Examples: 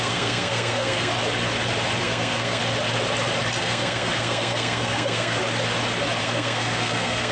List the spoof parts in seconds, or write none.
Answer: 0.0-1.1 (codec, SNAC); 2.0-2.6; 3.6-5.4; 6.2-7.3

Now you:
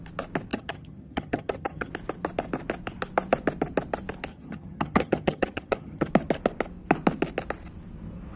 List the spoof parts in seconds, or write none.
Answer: 0.5-1.9 (vocoder, HiFi-GAN); 4.3-6.1